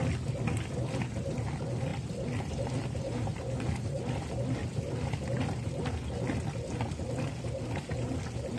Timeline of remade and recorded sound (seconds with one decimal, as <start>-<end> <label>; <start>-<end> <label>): 0.0-8.6 recorded